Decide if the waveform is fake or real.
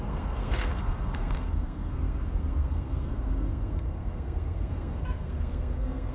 fake